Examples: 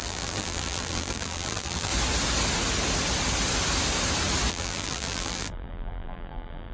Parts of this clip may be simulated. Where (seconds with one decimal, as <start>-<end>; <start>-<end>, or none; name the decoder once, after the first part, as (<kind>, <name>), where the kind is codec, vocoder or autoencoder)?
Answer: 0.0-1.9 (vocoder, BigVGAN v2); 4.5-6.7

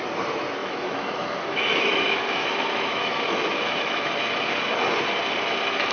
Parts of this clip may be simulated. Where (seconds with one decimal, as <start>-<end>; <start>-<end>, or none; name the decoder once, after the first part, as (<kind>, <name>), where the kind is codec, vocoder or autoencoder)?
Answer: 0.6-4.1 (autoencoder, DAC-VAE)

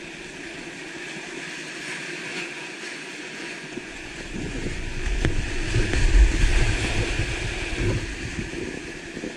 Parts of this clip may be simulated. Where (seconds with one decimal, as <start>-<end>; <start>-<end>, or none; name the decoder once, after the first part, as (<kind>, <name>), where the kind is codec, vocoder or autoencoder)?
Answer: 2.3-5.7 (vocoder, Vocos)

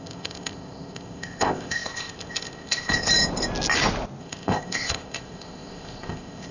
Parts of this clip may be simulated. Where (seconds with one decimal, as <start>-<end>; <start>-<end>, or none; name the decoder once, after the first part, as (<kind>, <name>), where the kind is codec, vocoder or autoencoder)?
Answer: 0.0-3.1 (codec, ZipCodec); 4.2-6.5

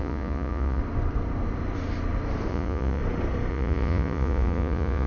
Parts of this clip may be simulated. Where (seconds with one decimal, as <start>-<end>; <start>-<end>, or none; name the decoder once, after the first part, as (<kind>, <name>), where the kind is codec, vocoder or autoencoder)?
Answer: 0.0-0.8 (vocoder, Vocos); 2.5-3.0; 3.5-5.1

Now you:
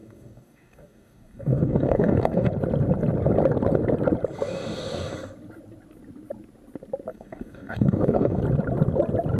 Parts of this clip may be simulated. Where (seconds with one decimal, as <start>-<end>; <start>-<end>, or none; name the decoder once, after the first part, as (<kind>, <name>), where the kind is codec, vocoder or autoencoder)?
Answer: 0.0-2.5 (codec, DAC); 7.1-8.4

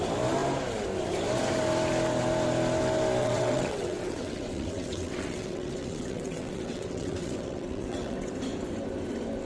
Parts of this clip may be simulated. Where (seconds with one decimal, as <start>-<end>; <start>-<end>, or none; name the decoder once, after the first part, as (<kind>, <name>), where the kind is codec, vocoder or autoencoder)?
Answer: 3.2-8.3 (vocoder, WaveNeXt)

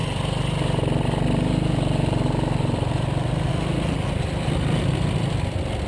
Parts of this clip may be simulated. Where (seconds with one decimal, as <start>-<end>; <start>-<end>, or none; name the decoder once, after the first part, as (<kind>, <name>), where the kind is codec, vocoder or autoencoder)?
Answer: none